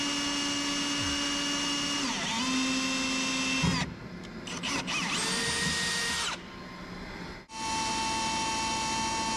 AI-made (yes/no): no